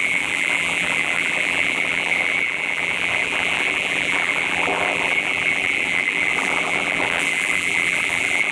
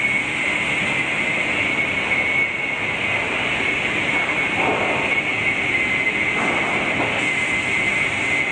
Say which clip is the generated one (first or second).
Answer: first